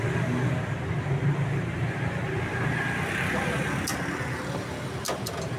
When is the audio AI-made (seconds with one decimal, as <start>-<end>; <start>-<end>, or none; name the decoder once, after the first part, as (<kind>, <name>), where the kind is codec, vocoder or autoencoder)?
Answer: none